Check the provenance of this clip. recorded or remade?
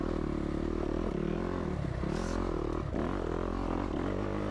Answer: recorded